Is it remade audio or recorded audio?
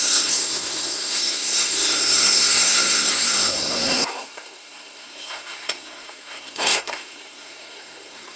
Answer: remade